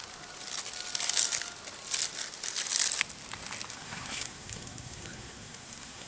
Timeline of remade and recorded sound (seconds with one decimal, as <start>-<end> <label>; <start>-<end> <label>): 0.0-3.7 recorded; 3.7-6.1 remade